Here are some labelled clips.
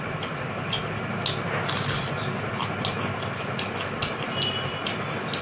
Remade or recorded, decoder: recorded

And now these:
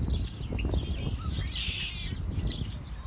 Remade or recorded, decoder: recorded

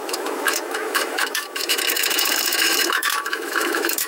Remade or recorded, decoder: remade, autoencoder, DAC-VAE